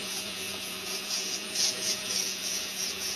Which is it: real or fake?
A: fake